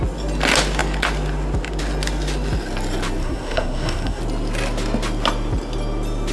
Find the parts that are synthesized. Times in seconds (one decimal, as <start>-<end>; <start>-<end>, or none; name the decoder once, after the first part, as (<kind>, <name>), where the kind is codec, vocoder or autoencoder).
3.2-4.2 (codec, SNAC)